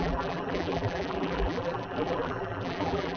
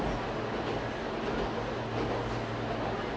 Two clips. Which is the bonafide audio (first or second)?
second